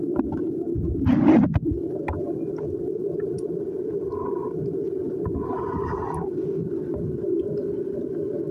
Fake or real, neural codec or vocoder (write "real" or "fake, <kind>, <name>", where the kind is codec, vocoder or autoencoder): real